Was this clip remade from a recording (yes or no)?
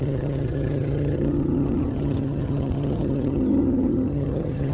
yes